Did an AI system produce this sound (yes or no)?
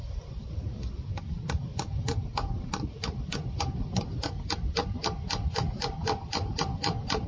no